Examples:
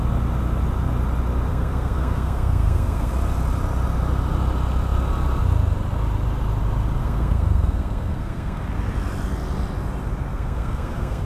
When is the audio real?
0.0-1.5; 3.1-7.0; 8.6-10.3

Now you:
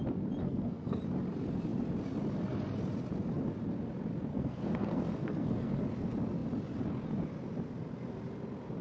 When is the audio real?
0.0-0.4; 1.0-4.3; 5.8-8.8

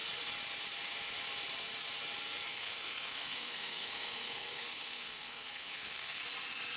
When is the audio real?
0.0-2.5; 6.2-6.8

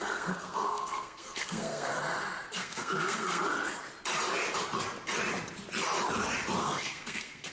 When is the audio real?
1.9-2.5; 3.4-6.6